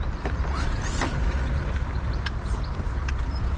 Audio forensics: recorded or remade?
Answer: recorded